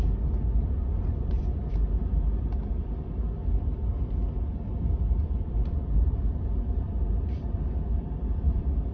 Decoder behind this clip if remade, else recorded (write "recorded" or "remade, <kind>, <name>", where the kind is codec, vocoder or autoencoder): recorded